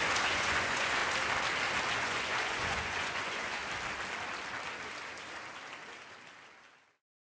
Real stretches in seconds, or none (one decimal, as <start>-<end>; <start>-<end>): 1.0-1.9; 3.6-7.4